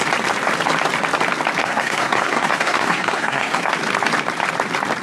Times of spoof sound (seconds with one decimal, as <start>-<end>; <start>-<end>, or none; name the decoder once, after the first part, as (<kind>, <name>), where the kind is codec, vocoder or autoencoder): 1.6-3.7 (codec, SNAC)